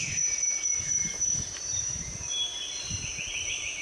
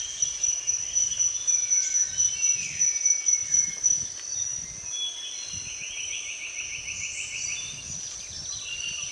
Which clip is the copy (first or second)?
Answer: first